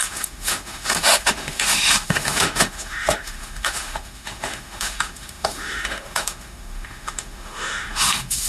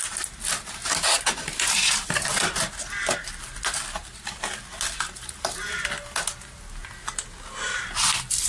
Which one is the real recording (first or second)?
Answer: second